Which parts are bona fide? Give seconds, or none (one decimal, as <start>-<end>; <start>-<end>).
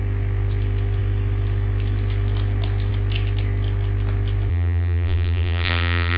0.0-4.5